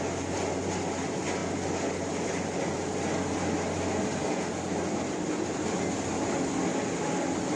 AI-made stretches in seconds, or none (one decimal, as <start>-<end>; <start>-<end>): none